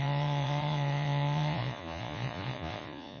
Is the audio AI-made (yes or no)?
yes